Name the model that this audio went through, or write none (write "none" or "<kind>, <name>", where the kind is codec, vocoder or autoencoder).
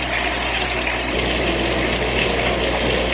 none